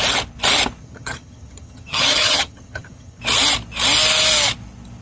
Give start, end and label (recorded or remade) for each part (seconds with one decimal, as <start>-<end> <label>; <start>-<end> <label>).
0.0-0.8 recorded; 0.8-3.2 remade; 3.2-5.0 recorded